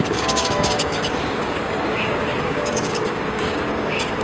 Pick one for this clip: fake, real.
fake